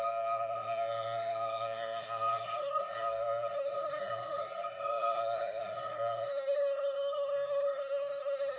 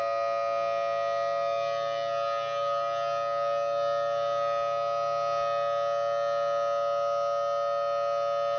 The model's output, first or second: first